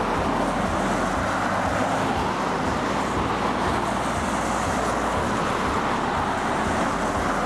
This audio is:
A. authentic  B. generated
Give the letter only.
A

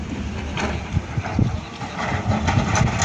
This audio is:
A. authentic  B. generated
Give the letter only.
A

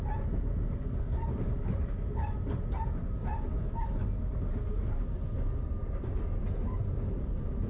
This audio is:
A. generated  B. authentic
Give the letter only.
B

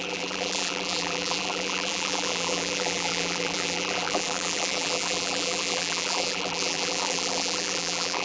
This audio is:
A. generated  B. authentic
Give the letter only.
A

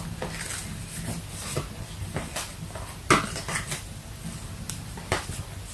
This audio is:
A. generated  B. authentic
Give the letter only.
B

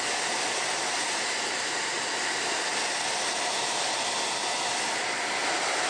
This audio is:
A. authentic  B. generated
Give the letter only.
A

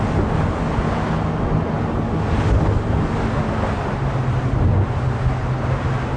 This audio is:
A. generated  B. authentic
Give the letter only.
B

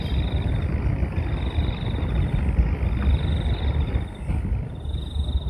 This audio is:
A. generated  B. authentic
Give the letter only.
B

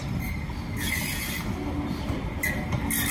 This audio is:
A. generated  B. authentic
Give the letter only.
B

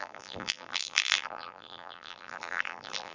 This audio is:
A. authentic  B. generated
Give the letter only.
B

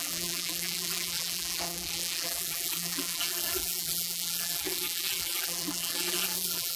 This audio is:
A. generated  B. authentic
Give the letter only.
A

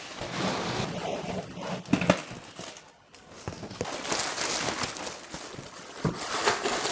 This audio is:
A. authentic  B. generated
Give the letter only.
A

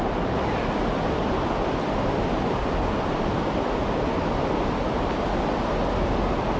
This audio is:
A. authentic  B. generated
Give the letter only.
A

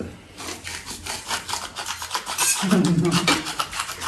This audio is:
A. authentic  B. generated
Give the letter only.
B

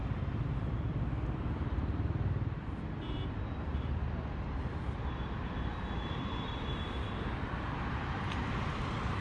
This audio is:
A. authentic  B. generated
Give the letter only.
B